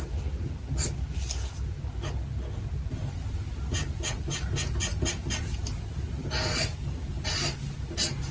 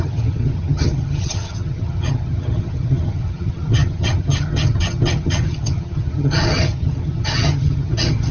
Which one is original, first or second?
first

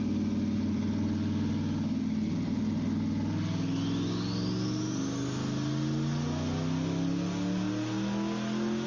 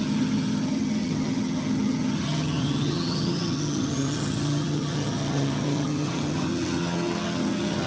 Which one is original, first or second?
first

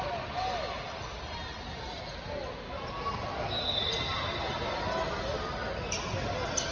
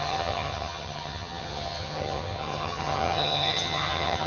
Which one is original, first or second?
first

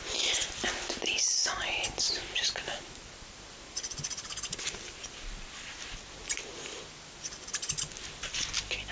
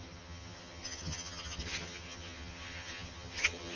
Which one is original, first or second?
first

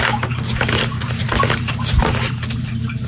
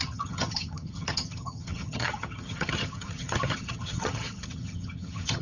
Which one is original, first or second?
first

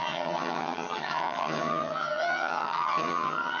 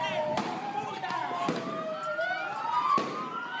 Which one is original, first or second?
second